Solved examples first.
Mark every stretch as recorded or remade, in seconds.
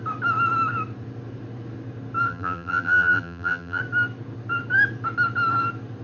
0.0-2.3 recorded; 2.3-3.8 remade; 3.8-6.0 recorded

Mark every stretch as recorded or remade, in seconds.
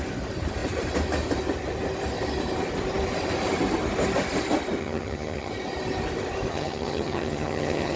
0.0-4.8 recorded; 4.8-5.5 remade; 5.5-6.5 recorded; 6.5-8.0 remade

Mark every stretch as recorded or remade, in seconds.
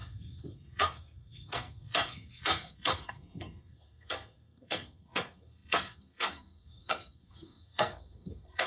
0.0-8.7 remade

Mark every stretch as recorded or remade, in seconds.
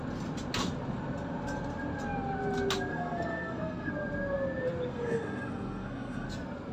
0.0-2.9 recorded; 2.9-3.9 remade; 3.9-4.9 recorded; 4.9-6.3 remade; 6.3-6.7 recorded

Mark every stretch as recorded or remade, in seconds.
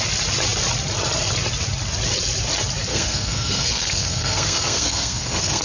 0.0-2.9 recorded; 2.9-5.6 remade